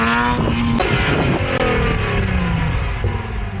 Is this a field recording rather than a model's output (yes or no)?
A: yes